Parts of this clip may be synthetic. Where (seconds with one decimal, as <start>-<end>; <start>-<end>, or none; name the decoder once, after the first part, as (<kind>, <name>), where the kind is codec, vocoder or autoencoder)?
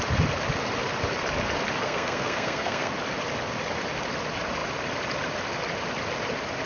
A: 1.8-2.9 (codec, SNAC)